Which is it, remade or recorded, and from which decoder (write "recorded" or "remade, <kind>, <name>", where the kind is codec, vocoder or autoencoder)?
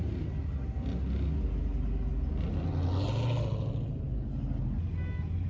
recorded